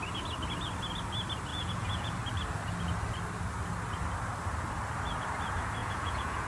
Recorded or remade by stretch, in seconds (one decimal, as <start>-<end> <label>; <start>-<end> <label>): 0.0-1.5 recorded; 1.5-2.1 remade; 2.1-5.8 recorded; 5.8-6.5 remade